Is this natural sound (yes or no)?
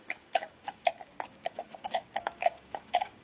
no